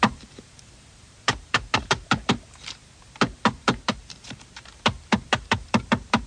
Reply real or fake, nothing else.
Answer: fake